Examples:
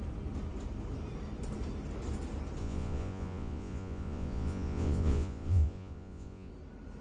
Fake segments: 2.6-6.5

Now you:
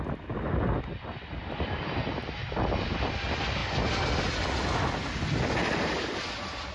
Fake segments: none

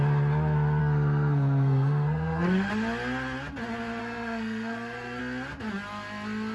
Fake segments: 0.8-2.7; 4.0-5.2

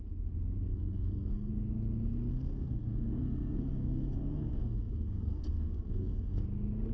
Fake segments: 0.7-1.5; 2.3-6.4

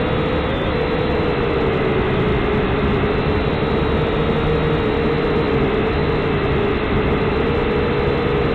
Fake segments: 2.3-3.5; 6.0-7.3

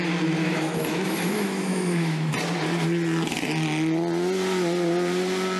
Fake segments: 0.4-2.3

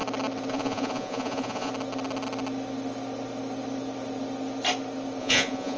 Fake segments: 0.5-1.7; 5.2-5.8